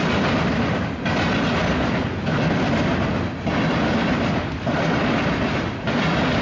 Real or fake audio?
real